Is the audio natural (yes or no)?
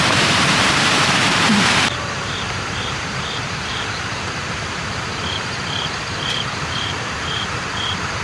no